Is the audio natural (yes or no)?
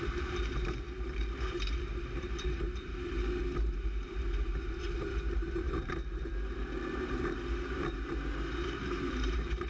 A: no